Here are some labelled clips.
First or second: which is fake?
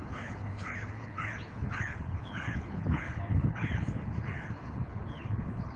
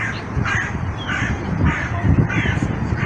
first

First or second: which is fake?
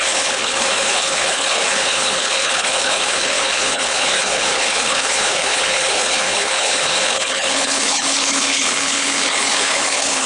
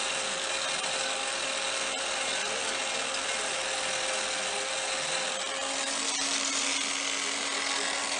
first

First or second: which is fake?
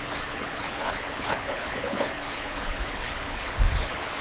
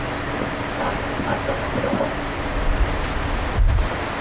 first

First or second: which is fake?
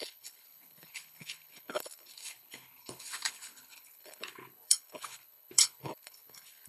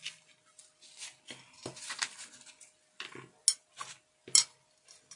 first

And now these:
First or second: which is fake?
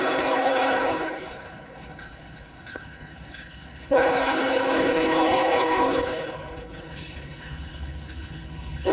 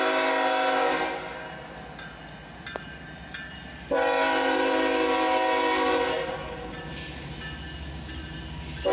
first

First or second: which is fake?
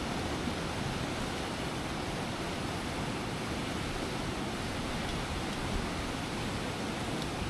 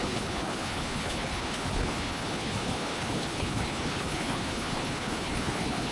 second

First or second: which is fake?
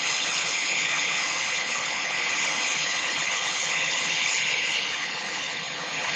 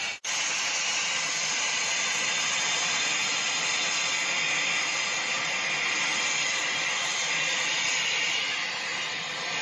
first